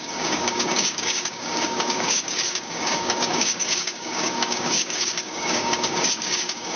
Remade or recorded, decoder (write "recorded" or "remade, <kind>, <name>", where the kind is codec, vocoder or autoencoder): remade, codec, DAC